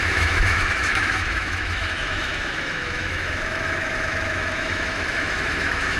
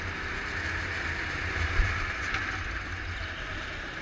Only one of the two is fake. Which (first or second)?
first